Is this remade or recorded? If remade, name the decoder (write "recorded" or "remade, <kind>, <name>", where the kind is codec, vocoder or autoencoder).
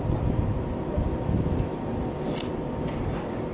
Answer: recorded